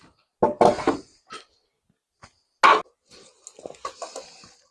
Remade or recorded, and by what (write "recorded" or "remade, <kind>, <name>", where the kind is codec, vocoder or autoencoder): recorded